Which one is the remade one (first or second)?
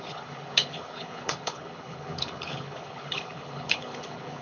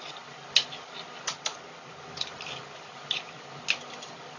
first